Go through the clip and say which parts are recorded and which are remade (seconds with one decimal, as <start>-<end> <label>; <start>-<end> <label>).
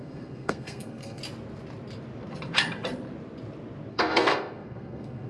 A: 0.0-1.2 remade; 1.2-3.9 recorded; 3.9-5.3 remade